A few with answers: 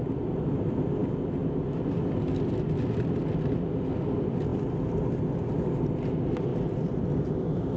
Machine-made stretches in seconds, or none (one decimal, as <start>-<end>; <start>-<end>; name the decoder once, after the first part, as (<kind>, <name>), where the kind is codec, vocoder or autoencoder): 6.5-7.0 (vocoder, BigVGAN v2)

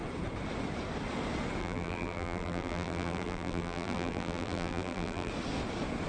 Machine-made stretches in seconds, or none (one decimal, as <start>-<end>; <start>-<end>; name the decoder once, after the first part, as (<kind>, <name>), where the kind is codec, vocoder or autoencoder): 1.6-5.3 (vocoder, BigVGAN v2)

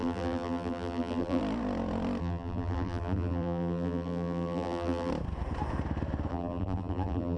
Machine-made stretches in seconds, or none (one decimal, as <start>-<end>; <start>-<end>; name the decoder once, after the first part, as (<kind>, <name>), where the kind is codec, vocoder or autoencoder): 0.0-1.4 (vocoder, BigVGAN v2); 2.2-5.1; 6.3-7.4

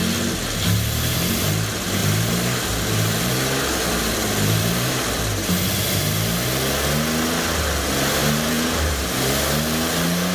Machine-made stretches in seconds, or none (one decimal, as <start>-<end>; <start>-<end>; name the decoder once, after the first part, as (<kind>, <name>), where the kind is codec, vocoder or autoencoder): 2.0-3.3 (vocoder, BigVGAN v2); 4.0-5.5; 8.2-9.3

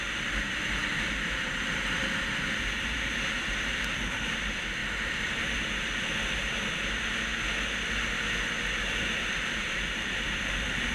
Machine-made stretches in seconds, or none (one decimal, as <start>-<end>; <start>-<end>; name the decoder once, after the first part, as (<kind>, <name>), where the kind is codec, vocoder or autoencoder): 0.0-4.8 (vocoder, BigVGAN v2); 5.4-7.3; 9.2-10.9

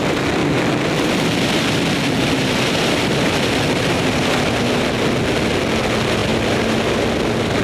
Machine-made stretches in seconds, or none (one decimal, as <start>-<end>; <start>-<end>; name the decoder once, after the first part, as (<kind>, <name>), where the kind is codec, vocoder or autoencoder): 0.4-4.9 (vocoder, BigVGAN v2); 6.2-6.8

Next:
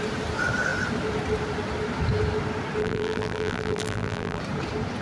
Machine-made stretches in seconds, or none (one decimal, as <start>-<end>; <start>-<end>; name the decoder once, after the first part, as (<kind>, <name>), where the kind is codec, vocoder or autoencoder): 2.8-4.4 (vocoder, BigVGAN v2)

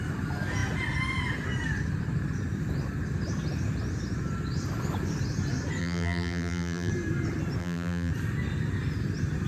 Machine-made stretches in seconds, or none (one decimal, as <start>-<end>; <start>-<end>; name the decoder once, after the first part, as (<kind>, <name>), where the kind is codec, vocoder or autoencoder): 5.8-6.9 (vocoder, BigVGAN v2); 7.6-8.1